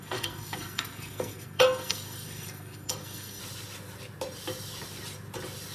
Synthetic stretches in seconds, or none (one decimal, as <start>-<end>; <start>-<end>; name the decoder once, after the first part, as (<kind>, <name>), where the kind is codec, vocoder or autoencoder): 0.0-3.4 (codec, SNAC)